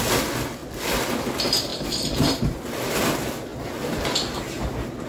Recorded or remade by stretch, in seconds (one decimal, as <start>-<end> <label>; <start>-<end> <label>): 0.0-1.7 recorded; 1.7-2.6 remade; 2.6-3.5 recorded; 3.5-4.4 remade; 4.4-5.1 recorded